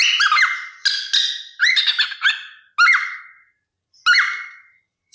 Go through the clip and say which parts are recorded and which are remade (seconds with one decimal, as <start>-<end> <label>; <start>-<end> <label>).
0.0-5.1 recorded